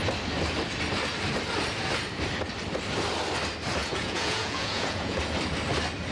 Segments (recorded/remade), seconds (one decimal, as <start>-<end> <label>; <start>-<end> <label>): 0.0-3.8 recorded; 3.8-5.2 remade; 5.2-6.1 recorded

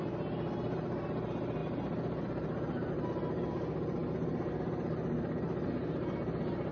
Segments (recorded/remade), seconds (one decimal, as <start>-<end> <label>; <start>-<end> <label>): 0.0-6.7 recorded

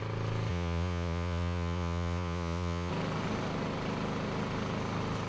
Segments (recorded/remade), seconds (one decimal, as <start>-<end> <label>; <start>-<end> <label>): 0.0-0.5 recorded; 0.5-2.9 remade; 2.9-5.3 recorded

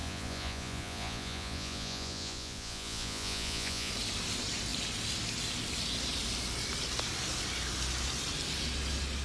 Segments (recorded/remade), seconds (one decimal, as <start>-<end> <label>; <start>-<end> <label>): 0.0-3.9 remade; 3.9-9.2 recorded

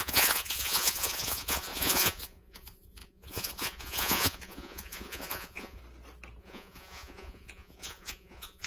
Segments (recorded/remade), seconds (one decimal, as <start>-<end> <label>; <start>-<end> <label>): 0.0-5.8 remade; 5.8-6.4 recorded; 6.4-8.7 remade